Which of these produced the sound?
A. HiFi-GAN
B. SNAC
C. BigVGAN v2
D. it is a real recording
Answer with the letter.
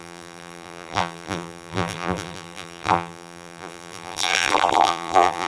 C